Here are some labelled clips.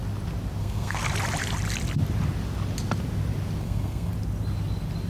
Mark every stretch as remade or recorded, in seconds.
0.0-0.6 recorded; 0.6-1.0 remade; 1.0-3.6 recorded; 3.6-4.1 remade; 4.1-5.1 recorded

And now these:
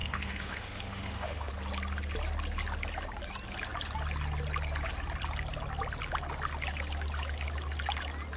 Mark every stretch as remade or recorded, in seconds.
0.0-1.5 remade; 1.5-8.4 recorded